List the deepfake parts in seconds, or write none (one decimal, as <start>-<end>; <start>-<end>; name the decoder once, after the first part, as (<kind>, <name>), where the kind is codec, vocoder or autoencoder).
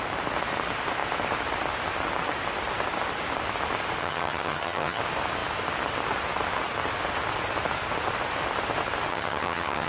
4.0-5.0 (vocoder, HiFi-GAN); 9.1-9.9